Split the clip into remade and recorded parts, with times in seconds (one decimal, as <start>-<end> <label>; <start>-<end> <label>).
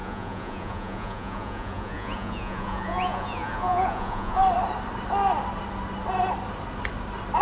0.0-4.4 remade; 4.4-7.4 recorded